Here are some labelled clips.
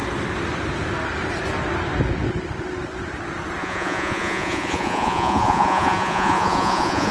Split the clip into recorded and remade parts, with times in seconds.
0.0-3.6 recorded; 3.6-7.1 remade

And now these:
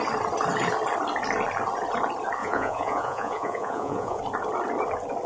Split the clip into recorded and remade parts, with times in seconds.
0.0-2.4 recorded; 2.4-4.2 remade; 4.2-5.3 recorded

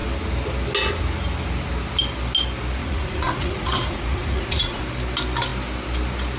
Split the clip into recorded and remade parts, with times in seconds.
0.0-2.8 recorded; 2.8-4.8 remade; 4.8-6.4 recorded

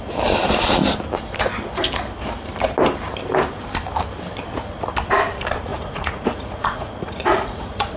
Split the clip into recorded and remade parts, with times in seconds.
0.0-5.7 recorded; 5.7-8.0 remade

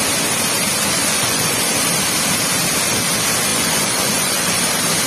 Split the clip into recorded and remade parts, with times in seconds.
0.0-0.9 recorded; 0.9-1.7 remade; 1.7-3.5 recorded; 3.5-4.6 remade; 4.6-5.1 recorded

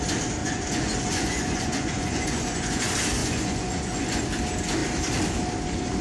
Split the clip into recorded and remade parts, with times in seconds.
0.0-0.4 recorded; 0.4-2.8 remade; 2.8-3.2 recorded; 3.2-4.2 remade; 4.2-6.0 recorded